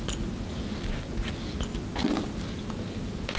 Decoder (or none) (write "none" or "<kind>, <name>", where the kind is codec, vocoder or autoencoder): none